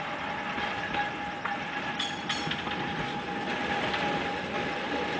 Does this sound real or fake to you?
real